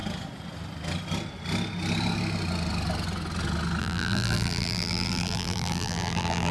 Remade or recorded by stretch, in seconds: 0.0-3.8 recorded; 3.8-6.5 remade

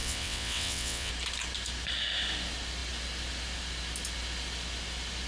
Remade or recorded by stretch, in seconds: 0.0-1.1 remade; 1.1-5.3 recorded

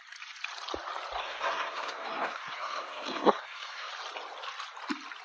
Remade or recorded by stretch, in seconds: 0.0-1.2 recorded; 1.2-3.9 remade; 3.9-5.2 recorded